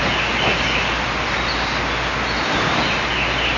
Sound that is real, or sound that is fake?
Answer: real